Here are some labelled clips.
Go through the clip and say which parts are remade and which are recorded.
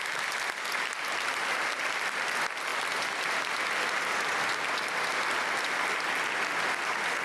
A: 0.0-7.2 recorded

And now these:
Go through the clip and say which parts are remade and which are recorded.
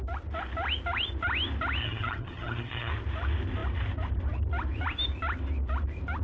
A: 0.0-1.8 recorded; 1.8-2.9 remade; 2.9-6.2 recorded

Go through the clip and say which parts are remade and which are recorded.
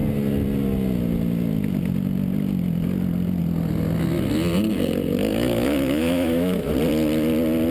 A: 0.0-5.3 recorded; 5.3-6.7 remade; 6.7-7.7 recorded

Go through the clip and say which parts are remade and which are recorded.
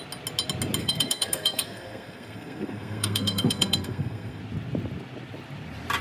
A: 0.0-0.8 recorded; 0.8-4.4 remade; 4.4-6.0 recorded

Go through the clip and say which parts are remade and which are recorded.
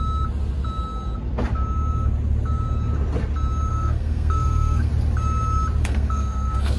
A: 0.0-3.7 recorded; 3.7-4.9 remade; 4.9-5.8 recorded; 5.8-6.8 remade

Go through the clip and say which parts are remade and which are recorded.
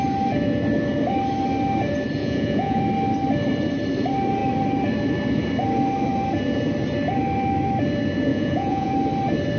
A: 0.0-2.2 recorded; 2.2-2.8 remade; 2.8-8.3 recorded; 8.3-8.9 remade; 8.9-9.6 recorded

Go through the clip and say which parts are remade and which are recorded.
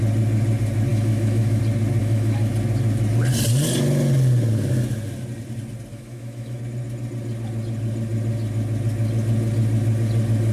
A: 0.0-0.9 recorded; 0.9-1.6 remade; 1.6-2.0 recorded; 2.0-2.5 remade; 2.5-5.9 recorded; 5.9-6.6 remade; 6.6-10.5 recorded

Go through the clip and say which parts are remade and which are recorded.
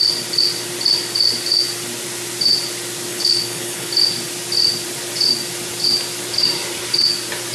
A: 0.0-3.1 recorded; 3.1-3.9 remade; 3.9-7.5 recorded